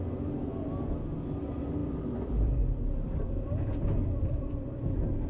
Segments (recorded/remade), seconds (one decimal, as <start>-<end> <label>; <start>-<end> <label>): 0.0-1.8 recorded; 1.8-5.3 remade